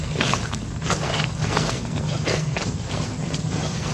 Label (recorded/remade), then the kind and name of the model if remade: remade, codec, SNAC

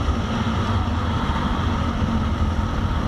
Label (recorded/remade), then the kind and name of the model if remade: recorded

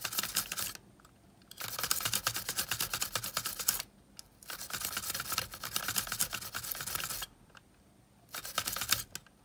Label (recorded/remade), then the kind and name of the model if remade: recorded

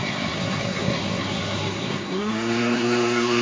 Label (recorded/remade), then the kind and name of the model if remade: remade, codec, SNAC